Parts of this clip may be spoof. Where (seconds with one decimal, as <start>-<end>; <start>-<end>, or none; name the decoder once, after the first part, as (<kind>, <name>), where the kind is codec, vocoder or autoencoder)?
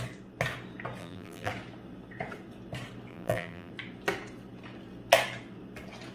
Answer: 1.0-1.5 (vocoder, BigVGAN v2); 3.1-3.7